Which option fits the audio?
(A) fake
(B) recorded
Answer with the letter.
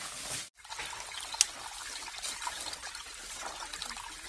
B